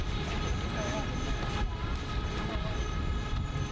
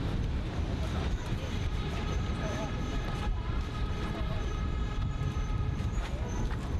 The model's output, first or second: second